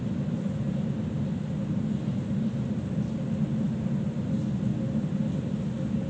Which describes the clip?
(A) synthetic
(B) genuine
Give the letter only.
B